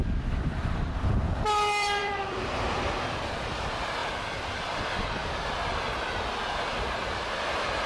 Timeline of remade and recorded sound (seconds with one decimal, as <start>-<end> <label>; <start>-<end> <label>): 0.0-5.2 remade; 5.2-7.3 recorded; 7.3-7.9 remade